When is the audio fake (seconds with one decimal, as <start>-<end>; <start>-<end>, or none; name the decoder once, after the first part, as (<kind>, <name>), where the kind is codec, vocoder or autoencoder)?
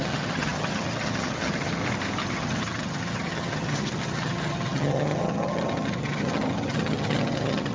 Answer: 0.0-1.8 (vocoder, HiFi-GAN); 2.3-7.7